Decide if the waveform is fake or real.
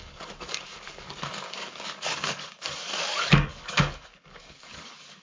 fake